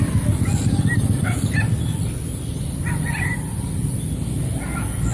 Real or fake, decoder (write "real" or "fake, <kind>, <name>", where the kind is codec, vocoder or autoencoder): real